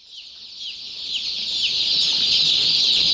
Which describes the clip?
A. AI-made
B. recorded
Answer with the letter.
B